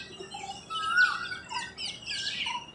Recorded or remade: recorded